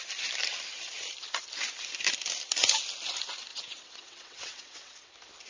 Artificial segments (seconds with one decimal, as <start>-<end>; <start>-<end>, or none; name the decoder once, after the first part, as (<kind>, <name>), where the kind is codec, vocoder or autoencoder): 3.5-5.1 (vocoder, WaveNeXt)